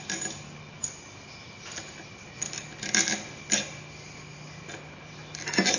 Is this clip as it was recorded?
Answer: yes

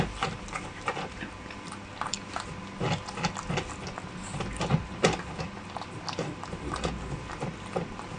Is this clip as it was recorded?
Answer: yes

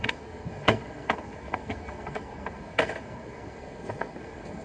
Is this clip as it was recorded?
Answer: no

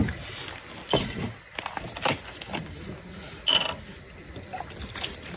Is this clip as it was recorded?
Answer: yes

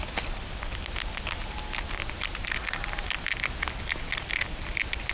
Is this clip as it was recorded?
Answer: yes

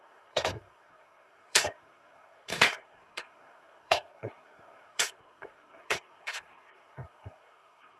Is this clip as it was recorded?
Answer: no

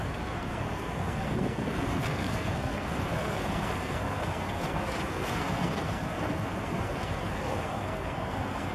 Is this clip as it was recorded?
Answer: no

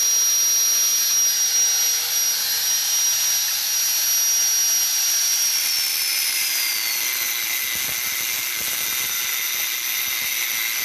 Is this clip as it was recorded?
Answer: yes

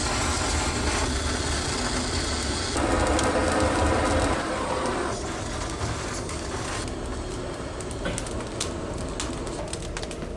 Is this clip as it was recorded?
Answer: yes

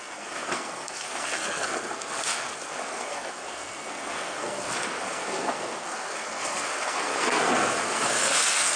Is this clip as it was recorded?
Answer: no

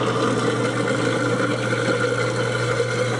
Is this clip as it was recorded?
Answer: yes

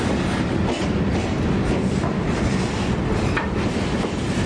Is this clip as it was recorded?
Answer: yes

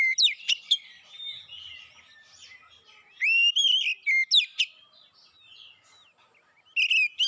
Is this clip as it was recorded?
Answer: yes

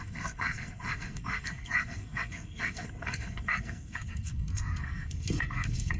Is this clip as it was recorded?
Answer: no